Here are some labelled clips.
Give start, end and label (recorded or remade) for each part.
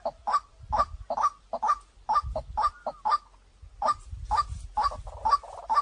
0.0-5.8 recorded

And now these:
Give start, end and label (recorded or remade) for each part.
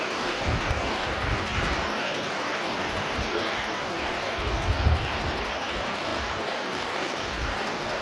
0.0-8.0 remade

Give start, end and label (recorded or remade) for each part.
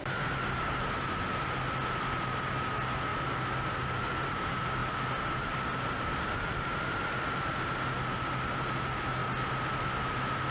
0.0-10.5 recorded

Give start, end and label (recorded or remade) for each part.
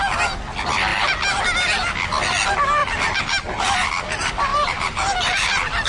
0.0-0.9 recorded; 0.9-1.4 remade; 1.4-2.8 recorded; 2.8-3.9 remade; 3.9-4.5 recorded; 4.5-5.9 remade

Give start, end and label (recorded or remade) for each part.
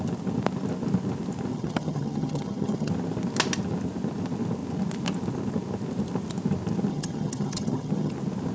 0.0-1.5 recorded; 1.5-2.9 remade; 2.9-6.9 recorded; 6.9-8.1 remade; 8.1-8.5 recorded